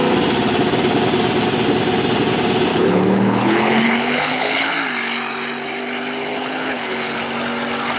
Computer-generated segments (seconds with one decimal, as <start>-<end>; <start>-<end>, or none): 2.7-4.7; 6.3-7.2